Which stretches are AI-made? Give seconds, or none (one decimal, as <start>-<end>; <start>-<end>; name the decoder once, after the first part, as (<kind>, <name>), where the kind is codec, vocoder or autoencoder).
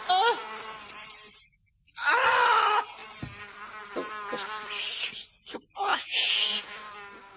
5.9-6.7 (vocoder, Vocos)